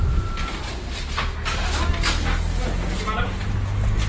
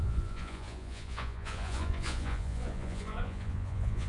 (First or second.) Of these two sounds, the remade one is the second